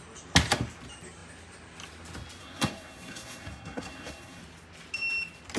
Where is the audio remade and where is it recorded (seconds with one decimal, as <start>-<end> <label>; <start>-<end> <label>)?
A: 0.0-2.4 recorded; 2.4-4.4 remade; 4.4-5.6 recorded